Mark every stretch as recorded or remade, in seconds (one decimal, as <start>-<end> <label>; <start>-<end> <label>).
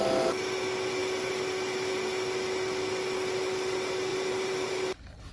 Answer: 0.0-4.1 recorded; 4.1-4.7 remade; 4.7-5.3 recorded